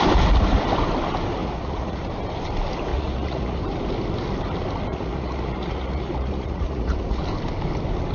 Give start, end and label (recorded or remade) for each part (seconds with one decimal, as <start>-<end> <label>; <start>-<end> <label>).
0.0-1.4 recorded; 1.4-2.0 remade; 2.0-2.9 recorded; 2.9-3.6 remade; 3.6-4.9 recorded; 4.9-7.2 remade; 7.2-8.1 recorded